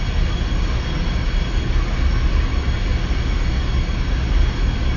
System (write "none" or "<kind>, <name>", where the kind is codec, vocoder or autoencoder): none